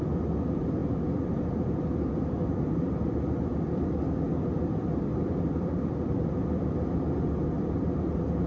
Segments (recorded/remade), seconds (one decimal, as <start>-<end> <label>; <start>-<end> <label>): 0.0-0.8 recorded; 0.8-2.1 remade; 2.1-5.1 recorded; 5.1-7.3 remade; 7.3-8.5 recorded